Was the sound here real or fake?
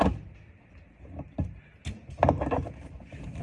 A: real